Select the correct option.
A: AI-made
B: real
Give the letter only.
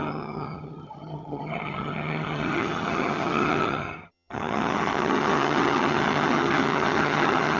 A